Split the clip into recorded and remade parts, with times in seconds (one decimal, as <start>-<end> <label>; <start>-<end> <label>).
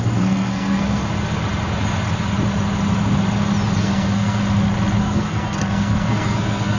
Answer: 0.0-1.0 remade; 1.0-3.8 recorded; 3.8-4.4 remade; 4.4-5.0 recorded; 5.0-6.8 remade